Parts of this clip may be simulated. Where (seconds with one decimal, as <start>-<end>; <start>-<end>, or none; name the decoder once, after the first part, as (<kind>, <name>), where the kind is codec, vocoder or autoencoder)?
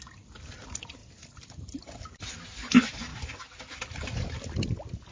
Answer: none